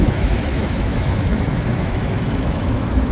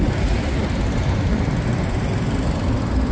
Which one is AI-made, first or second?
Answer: first